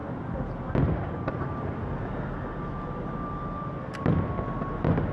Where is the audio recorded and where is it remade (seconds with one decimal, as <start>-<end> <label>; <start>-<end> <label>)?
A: 0.0-5.1 recorded